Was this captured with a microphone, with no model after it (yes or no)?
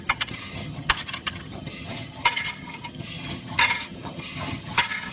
no